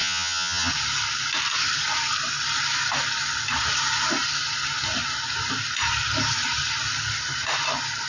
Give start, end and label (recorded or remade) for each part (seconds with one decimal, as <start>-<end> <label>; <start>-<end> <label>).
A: 0.0-0.7 remade; 0.7-8.1 recorded